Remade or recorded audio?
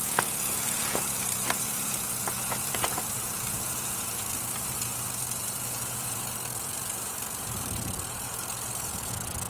remade